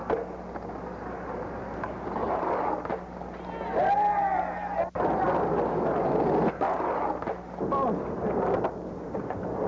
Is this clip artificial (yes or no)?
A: no